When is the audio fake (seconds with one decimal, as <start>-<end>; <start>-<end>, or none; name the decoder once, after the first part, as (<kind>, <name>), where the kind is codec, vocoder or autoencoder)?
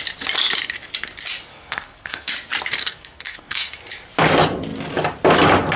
1.5-2.3 (codec, SNAC); 2.8-3.8